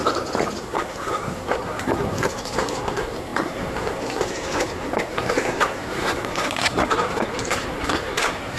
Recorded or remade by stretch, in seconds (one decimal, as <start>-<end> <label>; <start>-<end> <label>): 0.0-0.6 recorded; 0.6-8.6 remade